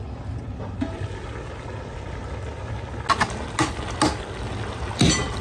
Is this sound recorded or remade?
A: recorded